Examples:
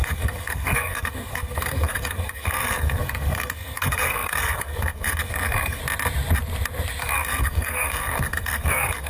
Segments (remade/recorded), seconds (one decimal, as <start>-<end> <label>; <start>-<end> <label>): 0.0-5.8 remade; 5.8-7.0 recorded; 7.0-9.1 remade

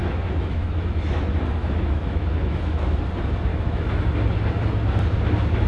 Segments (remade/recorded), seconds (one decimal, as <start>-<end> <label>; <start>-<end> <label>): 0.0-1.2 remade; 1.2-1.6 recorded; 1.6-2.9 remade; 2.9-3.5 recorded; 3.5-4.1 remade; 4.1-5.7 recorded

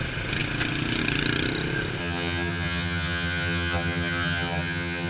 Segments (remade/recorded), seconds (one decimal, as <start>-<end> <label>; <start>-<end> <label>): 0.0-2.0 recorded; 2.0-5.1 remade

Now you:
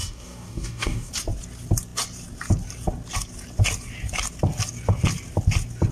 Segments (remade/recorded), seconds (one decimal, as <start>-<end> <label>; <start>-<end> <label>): 0.0-1.1 remade; 1.1-5.9 recorded